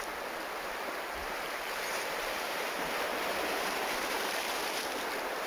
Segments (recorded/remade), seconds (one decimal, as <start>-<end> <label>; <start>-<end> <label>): 0.0-1.2 recorded; 1.2-4.5 remade; 4.5-5.5 recorded